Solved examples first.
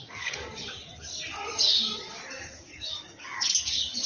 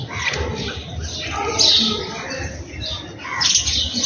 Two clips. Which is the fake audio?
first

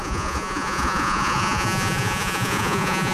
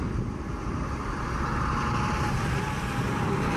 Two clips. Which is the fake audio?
first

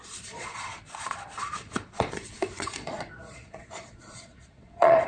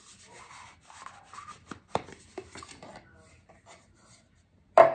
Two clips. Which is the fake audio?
first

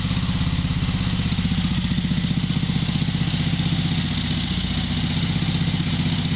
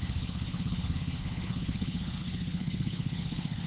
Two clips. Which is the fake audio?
second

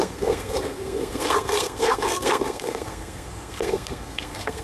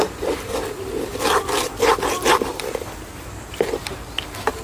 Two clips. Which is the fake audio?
first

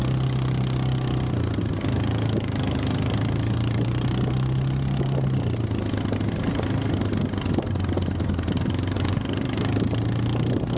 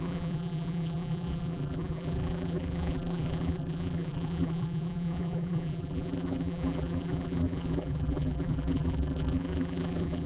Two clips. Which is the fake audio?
second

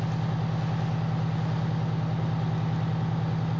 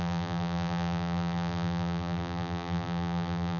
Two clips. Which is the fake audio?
second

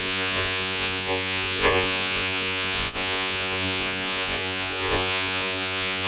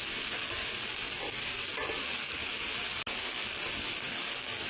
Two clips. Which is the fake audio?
first